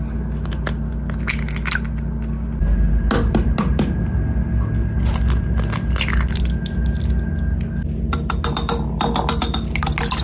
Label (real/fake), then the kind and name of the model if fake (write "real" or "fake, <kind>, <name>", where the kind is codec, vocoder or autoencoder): real